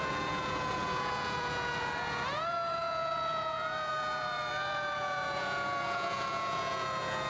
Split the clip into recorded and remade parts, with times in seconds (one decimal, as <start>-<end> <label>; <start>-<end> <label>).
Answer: 0.0-7.3 remade